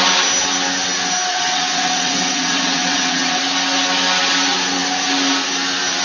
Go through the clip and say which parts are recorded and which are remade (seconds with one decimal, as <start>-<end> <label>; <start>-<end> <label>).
0.0-1.3 recorded; 1.3-3.4 remade; 3.4-6.0 recorded